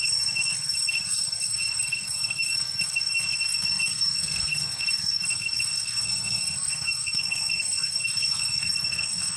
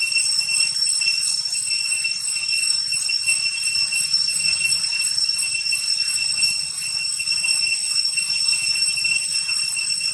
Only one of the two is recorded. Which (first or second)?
second